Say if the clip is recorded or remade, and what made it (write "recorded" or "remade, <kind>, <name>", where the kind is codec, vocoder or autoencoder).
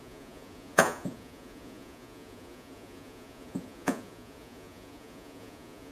remade, vocoder, Vocos